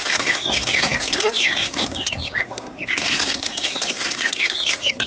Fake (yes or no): yes